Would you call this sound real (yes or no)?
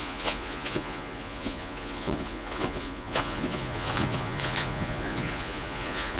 no